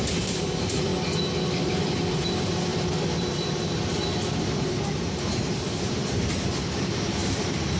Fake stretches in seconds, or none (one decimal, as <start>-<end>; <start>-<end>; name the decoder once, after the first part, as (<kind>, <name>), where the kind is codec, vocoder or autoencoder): 0.0-0.9 (vocoder, BigVGAN v2); 1.6-2.7; 4.7-7.8